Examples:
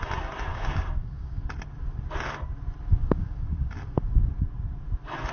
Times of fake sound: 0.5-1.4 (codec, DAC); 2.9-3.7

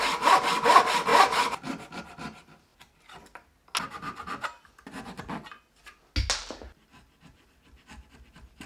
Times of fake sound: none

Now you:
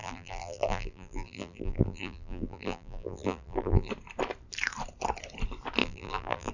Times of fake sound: 0.0-3.9 (vocoder, BigVGAN v2); 5.8-6.5

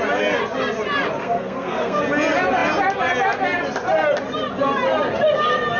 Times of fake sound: 1.2-2.0 (codec, SNAC)

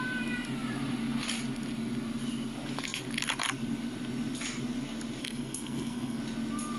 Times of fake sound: 5.2-6.2 (codec, SNAC)

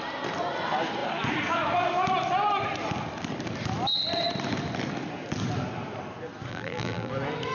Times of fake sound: 6.5-7.1 (vocoder, BigVGAN v2)

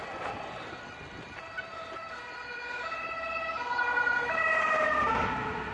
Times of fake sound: none